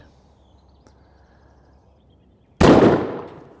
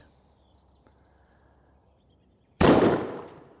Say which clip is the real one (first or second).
first